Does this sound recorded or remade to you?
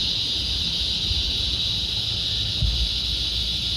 recorded